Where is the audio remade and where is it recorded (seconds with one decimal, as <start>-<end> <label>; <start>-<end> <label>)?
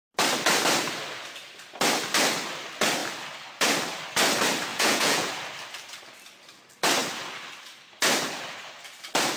0.0-4.7 recorded; 4.7-5.3 remade; 5.3-9.4 recorded